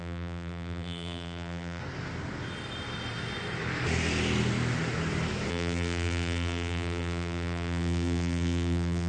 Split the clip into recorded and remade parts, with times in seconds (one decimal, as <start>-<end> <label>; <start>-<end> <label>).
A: 0.0-1.8 remade; 1.8-5.5 recorded; 5.5-9.1 remade